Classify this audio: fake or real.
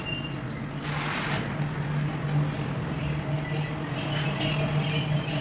real